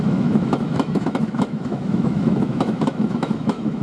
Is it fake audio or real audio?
fake